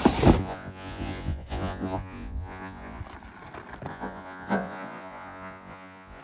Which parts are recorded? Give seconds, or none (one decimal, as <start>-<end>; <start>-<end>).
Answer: 0.0-0.4; 3.0-3.9

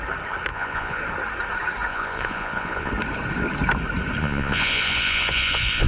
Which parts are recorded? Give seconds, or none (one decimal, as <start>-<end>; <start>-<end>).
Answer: 0.0-0.5; 1.0-1.9; 2.9-4.2

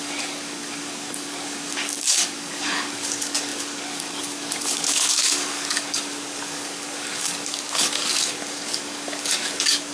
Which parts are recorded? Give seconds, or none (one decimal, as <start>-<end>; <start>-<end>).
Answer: none